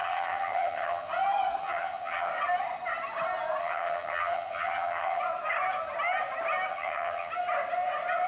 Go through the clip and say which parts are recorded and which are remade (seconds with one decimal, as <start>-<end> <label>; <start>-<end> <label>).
0.0-1.1 remade; 1.1-1.6 recorded; 1.6-2.3 remade; 2.3-3.6 recorded; 3.6-5.2 remade; 5.2-6.7 recorded; 6.7-7.3 remade; 7.3-8.3 recorded